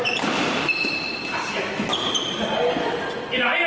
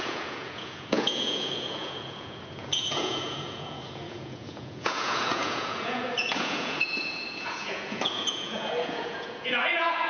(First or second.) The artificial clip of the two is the second